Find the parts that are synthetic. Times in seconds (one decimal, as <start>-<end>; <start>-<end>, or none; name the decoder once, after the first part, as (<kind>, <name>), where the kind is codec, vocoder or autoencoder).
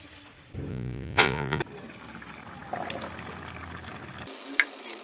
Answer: 0.7-1.6 (vocoder, Vocos)